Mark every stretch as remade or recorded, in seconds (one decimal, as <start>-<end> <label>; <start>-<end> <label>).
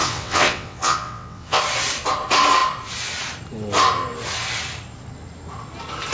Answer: 0.0-1.6 remade; 1.6-6.1 recorded